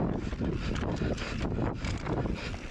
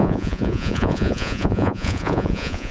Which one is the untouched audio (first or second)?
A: first